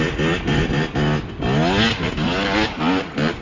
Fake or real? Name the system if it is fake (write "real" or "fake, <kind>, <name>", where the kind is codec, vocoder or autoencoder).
real